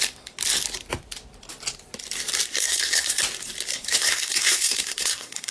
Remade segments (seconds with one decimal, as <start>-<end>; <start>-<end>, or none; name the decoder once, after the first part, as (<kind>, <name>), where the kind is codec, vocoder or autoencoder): 2.5-3.2 (codec, SNAC); 3.7-5.5